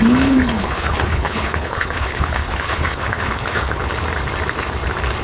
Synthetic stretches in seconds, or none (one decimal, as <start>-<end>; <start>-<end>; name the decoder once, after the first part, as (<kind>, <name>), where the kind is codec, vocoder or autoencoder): 0.0-3.8 (codec, HILCodec)